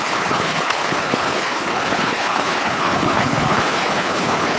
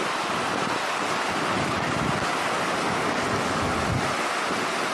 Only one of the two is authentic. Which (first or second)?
second